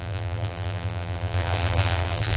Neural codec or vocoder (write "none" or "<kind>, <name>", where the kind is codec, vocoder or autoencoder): vocoder, BigVGAN v2